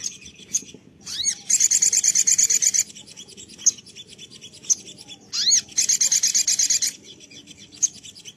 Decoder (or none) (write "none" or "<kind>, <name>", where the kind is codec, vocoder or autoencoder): none